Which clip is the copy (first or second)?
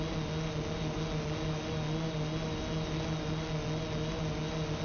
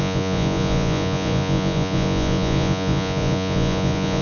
second